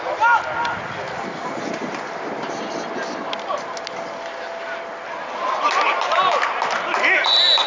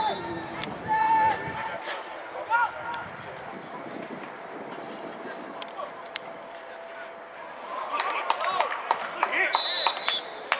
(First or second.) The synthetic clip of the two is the second